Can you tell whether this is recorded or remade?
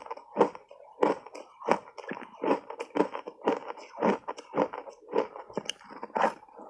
recorded